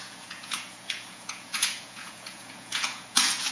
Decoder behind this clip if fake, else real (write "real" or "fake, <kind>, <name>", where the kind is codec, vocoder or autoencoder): fake, vocoder, Vocos